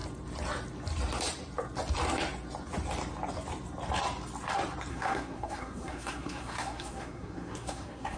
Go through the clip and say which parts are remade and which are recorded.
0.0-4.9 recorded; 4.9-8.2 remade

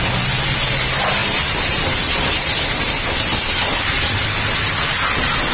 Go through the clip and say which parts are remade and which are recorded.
0.0-1.2 recorded; 1.2-4.3 remade; 4.3-5.5 recorded